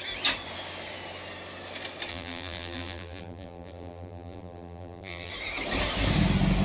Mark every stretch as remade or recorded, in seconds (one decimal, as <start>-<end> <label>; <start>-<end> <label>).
0.0-2.1 recorded; 2.1-5.3 remade; 5.3-6.6 recorded